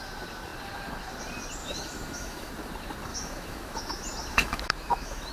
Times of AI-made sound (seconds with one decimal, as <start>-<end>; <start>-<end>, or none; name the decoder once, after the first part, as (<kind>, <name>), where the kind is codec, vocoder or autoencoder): 1.6-2.5 (autoencoder, DAC-VAE); 3.1-3.8; 4.3-5.3